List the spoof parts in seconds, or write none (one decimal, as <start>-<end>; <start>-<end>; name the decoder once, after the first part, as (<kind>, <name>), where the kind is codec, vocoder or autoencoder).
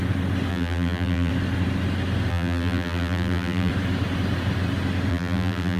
0.5-1.3 (vocoder, BigVGAN v2); 2.3-3.7; 5.1-5.8